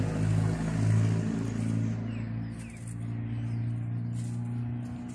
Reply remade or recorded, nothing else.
recorded